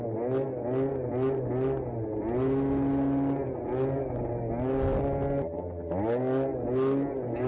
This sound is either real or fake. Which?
real